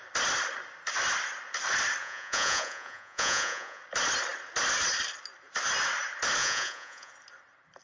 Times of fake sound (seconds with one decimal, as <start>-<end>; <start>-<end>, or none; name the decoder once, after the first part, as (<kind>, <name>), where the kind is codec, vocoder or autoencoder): 2.0-3.8 (vocoder, Vocos); 6.4-7.1